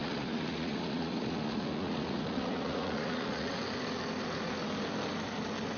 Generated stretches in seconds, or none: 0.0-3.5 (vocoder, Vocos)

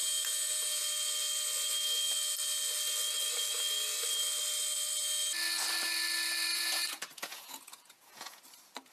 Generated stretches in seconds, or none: 0.0-0.8 (vocoder, Vocos); 6.5-8.4